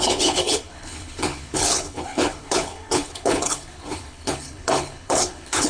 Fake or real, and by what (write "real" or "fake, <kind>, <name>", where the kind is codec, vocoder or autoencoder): fake, codec, HILCodec